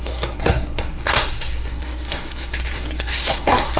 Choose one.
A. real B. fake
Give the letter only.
B